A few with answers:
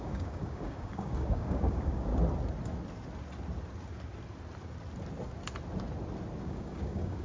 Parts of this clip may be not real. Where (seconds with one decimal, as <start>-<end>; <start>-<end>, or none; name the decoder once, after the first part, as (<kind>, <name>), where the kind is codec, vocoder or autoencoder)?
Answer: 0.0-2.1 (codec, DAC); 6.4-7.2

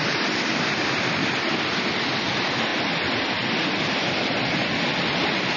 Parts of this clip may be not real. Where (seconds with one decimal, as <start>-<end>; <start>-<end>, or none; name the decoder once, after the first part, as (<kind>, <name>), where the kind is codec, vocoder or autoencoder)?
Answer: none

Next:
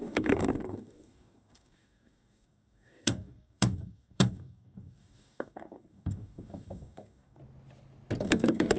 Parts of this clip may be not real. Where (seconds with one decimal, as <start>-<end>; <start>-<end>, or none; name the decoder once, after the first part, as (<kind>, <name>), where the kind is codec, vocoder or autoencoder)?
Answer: 0.0-7.4 (codec, DAC); 8.2-8.8